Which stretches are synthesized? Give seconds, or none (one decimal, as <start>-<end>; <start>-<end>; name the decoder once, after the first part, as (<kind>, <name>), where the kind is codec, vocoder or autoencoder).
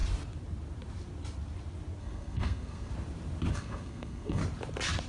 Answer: 2.0-2.9 (codec, SNAC); 3.5-4.4